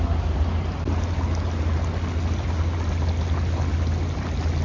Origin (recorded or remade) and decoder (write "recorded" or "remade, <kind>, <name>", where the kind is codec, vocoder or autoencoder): recorded